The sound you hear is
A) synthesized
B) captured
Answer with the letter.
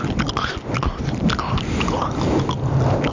B